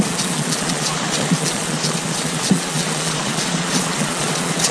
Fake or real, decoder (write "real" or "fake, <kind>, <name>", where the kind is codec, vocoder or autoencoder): fake, vocoder, Vocos